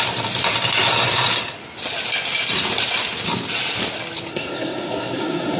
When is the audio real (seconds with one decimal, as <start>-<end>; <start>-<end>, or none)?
0.0-4.3